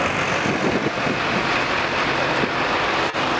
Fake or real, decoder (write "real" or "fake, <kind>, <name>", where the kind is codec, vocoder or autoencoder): real